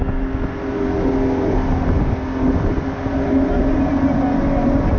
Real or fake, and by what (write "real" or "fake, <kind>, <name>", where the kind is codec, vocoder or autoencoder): real